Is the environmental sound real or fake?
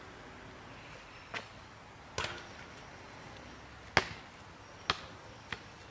real